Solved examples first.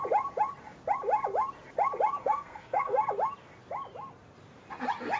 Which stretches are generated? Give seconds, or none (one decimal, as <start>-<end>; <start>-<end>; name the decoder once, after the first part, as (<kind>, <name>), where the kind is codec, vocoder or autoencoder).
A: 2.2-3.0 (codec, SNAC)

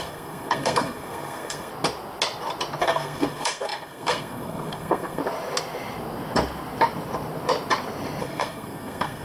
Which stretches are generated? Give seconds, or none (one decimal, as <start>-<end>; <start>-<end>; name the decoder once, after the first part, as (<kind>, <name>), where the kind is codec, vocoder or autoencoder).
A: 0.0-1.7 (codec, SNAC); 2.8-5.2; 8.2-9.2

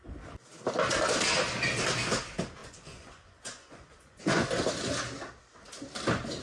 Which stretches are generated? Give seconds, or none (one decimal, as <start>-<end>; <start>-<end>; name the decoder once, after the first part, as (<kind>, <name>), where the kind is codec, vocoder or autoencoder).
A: 2.6-4.5 (vocoder, Vocos)

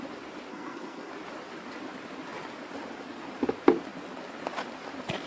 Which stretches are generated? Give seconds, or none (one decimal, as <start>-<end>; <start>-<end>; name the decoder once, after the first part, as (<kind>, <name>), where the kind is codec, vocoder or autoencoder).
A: 0.5-1.1 (codec, SNAC)